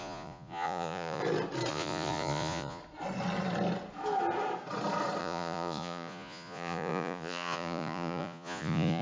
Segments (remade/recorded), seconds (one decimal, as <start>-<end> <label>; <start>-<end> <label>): 0.0-1.2 remade; 1.2-1.7 recorded; 1.7-2.8 remade; 2.8-5.2 recorded; 5.2-9.0 remade